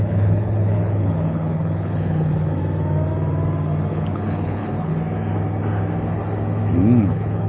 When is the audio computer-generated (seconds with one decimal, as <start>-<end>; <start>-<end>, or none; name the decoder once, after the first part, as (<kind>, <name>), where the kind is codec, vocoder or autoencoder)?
0.0-2.6 (codec, HILCodec); 3.9-4.9; 7.0-7.5

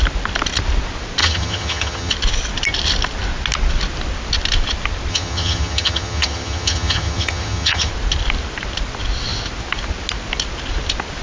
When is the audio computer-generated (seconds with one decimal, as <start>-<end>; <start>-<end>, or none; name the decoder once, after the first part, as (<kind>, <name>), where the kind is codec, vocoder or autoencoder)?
1.2-2.1 (vocoder, HiFi-GAN); 5.1-7.9

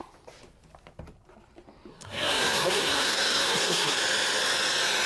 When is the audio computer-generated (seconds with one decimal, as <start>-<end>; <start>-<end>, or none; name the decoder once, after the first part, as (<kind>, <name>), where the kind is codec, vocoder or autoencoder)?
1.9-4.0 (codec, SNAC)